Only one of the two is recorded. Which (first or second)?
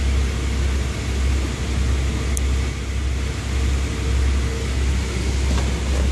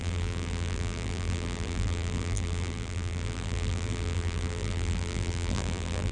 first